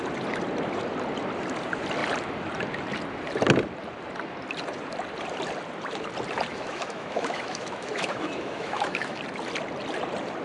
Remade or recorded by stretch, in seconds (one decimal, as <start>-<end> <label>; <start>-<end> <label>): 0.0-6.5 recorded; 6.5-9.2 remade; 9.2-10.4 recorded